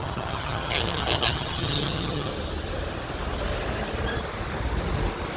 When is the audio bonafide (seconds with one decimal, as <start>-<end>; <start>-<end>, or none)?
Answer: 2.3-5.4